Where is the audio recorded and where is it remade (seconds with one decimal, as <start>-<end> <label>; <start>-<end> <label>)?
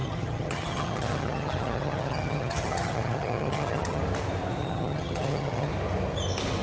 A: 0.0-4.0 remade; 4.0-4.6 recorded; 4.6-5.7 remade; 5.7-6.6 recorded